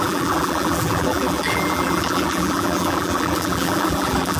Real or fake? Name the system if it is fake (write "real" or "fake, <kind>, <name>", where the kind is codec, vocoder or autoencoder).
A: fake, vocoder, BigVGAN v2